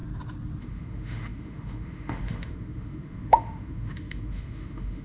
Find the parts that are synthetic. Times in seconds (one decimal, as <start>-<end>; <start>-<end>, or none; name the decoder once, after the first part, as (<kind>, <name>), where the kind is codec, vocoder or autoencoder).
0.6-5.0 (autoencoder, DAC-VAE)